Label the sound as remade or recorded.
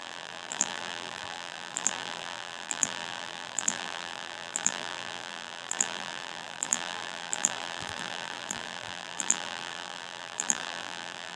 remade